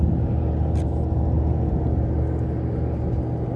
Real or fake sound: real